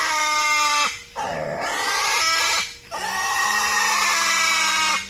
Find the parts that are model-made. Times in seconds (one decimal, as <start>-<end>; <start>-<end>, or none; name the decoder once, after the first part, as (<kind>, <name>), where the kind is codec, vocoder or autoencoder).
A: none